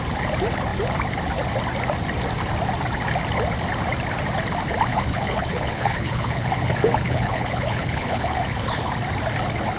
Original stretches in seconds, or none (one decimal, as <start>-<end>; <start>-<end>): 0.0-4.9; 8.9-9.8